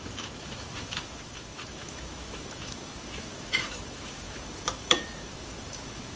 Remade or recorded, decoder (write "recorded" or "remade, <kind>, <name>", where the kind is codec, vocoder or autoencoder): remade, autoencoder, DAC-VAE